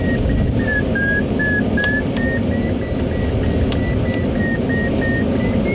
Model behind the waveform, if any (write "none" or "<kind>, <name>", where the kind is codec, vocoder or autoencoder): none